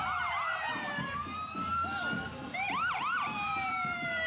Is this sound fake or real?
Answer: fake